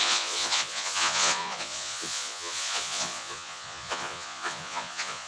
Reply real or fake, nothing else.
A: fake